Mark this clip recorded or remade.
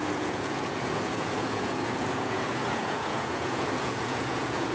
remade